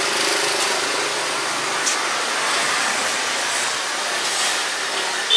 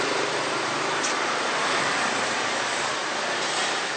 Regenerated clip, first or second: second